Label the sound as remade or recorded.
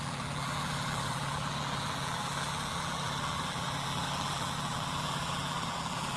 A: remade